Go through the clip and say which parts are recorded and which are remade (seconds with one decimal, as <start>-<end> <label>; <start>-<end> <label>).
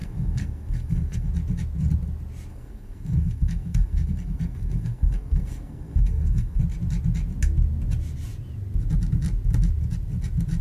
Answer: 0.0-1.3 remade; 1.3-2.5 recorded; 2.5-6.6 remade; 6.6-10.6 recorded